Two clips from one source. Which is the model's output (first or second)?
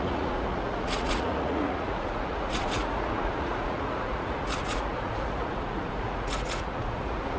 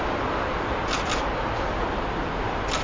first